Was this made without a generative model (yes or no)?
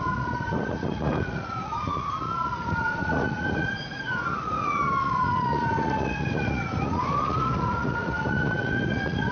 no